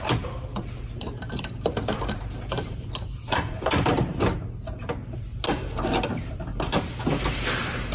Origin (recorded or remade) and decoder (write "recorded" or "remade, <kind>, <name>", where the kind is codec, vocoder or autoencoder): remade, vocoder, BigVGAN v2